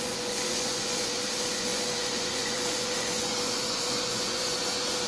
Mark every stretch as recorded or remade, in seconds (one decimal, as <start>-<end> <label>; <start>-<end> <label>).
0.0-5.1 remade